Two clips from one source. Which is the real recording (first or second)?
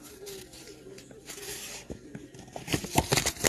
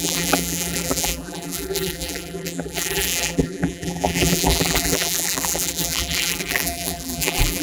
first